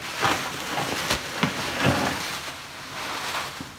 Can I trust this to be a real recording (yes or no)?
yes